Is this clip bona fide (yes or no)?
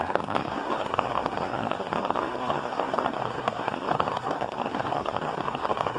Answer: no